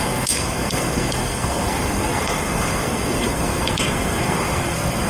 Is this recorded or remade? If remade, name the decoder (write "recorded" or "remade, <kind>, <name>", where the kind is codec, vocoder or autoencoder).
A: remade, codec, SNAC